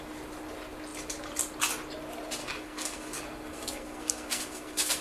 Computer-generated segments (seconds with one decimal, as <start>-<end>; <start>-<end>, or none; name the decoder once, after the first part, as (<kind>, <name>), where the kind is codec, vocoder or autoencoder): 2.4-5.0 (codec, SNAC)